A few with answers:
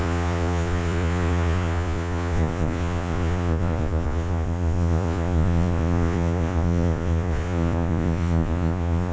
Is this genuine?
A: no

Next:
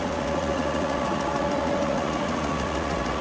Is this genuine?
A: no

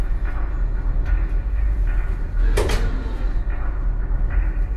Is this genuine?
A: yes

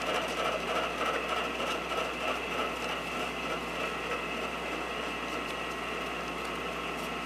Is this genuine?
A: yes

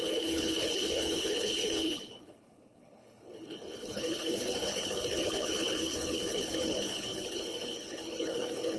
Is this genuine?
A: no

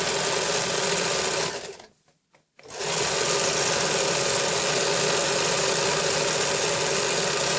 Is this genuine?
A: yes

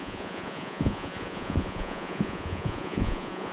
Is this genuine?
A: no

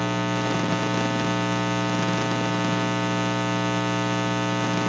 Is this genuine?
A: yes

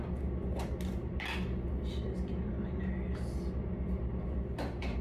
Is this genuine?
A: yes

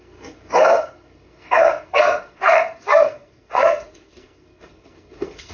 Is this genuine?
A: no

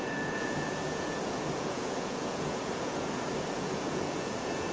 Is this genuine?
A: no